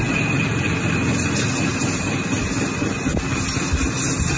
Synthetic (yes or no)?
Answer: no